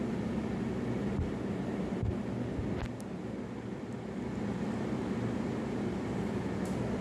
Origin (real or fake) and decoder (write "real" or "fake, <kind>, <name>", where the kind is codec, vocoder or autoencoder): real